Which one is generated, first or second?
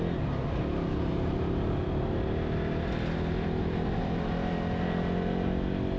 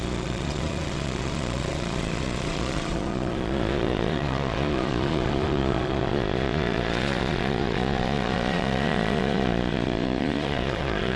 second